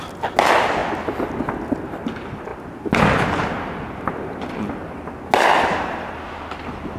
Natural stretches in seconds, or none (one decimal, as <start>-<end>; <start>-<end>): 0.0-7.0